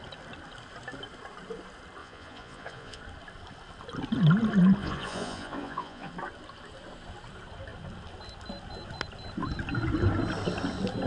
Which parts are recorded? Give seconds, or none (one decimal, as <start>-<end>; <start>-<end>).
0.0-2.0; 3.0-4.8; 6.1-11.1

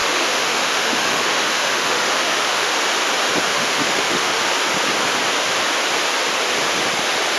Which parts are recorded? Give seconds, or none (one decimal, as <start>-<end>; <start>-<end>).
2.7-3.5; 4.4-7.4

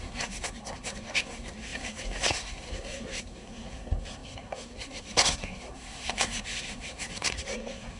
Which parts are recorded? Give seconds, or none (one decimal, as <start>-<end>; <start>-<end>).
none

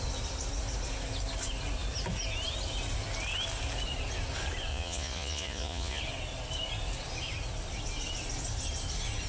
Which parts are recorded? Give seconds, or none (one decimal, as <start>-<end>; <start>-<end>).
0.0-4.7; 6.0-9.3

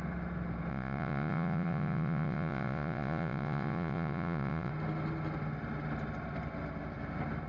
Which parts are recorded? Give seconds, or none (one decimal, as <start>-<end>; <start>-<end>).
0.0-0.7; 4.7-7.5